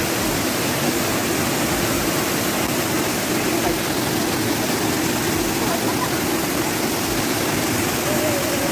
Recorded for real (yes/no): yes